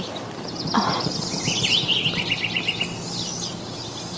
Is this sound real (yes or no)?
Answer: yes